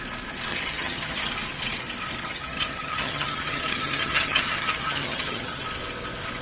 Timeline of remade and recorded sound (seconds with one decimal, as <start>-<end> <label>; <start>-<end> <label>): 0.0-0.5 recorded; 0.5-1.3 remade; 1.3-2.2 recorded; 2.2-5.6 remade; 5.6-6.4 recorded